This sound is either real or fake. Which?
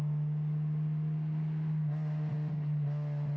real